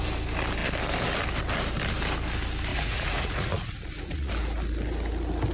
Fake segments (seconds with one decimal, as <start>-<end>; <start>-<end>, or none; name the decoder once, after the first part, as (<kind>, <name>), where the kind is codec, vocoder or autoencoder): 2.7-4.3 (vocoder, Vocos)